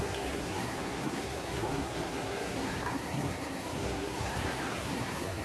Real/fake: fake